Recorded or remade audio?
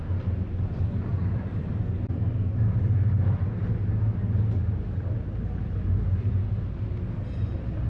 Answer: recorded